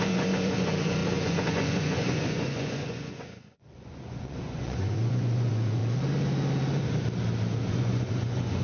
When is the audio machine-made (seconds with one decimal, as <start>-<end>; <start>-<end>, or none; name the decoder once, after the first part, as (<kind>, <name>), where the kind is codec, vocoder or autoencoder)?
0.0-5.8 (vocoder, Vocos); 7.7-8.6